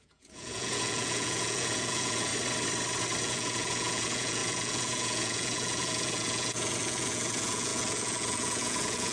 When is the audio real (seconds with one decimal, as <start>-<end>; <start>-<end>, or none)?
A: 2.3-3.2